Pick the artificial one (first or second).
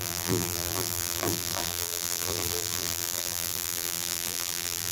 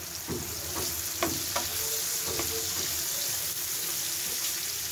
first